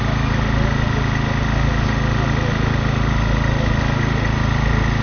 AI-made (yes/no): no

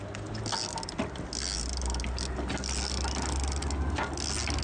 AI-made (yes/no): no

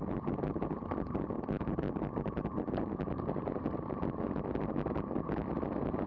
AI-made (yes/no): no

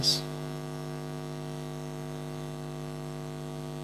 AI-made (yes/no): yes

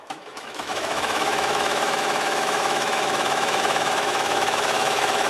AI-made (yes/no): yes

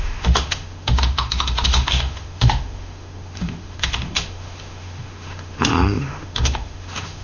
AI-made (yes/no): yes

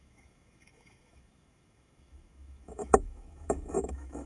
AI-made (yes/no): yes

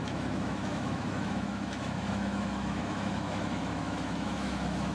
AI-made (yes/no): yes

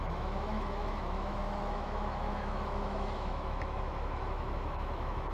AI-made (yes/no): yes